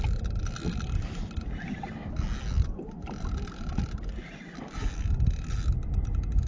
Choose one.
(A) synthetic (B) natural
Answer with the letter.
B